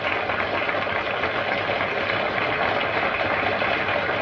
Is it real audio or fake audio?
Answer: real